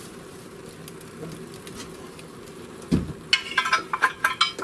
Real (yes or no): yes